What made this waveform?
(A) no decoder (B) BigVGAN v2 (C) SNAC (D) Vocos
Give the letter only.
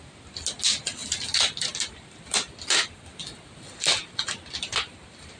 A